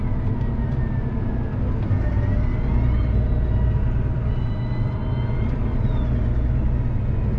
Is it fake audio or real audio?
real